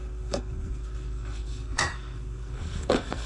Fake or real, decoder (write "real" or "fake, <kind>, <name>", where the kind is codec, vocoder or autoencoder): fake, codec, SNAC